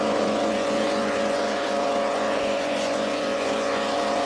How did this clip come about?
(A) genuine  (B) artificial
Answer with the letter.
B